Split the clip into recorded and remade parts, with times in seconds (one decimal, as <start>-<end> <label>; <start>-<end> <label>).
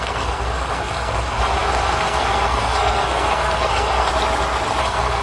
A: 0.0-4.1 remade; 4.1-4.8 recorded; 4.8-5.2 remade